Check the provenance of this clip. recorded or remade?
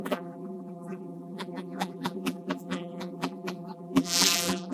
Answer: remade